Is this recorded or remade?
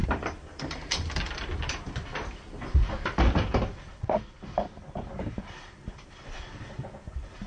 remade